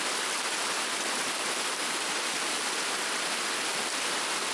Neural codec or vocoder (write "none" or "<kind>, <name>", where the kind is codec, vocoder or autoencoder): none